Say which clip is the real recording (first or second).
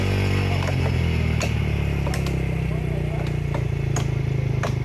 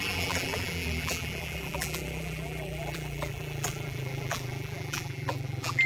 first